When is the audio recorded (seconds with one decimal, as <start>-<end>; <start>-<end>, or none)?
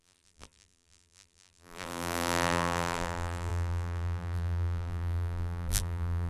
none